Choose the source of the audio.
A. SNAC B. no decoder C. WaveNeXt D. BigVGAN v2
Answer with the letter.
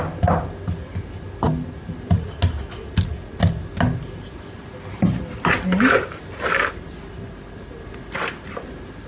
B